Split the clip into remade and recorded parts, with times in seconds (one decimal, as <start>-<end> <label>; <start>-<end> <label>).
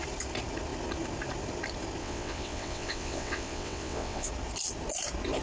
0.0-2.0 recorded; 2.0-4.3 remade; 4.3-5.4 recorded